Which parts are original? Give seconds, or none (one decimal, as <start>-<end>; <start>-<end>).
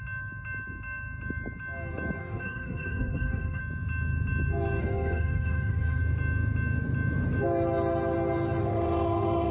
0.0-2.2; 3.6-4.8; 6.0-8.6